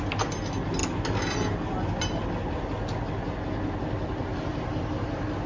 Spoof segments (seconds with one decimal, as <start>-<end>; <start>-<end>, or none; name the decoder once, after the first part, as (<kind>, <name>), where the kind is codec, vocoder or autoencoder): none